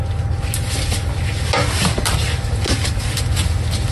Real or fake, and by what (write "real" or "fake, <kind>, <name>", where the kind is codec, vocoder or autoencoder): real